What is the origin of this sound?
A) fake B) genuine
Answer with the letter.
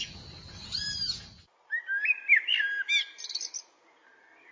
B